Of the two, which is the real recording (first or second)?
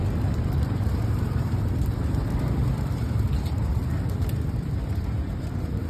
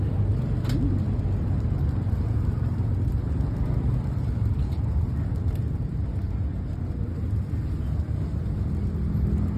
second